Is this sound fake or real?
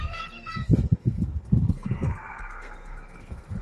fake